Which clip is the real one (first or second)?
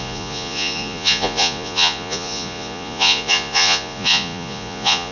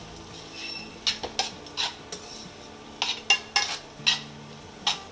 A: second